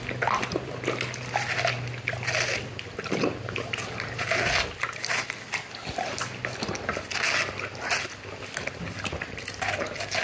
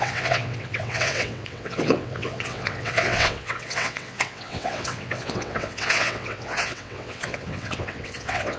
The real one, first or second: first